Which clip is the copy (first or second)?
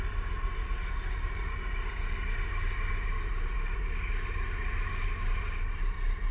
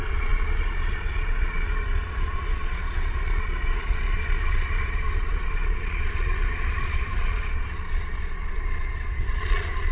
second